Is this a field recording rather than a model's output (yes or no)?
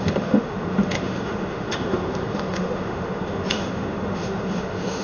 no